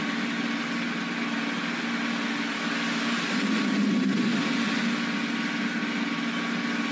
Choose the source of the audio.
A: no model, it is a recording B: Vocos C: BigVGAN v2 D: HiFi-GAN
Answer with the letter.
A